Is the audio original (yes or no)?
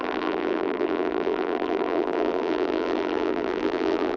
no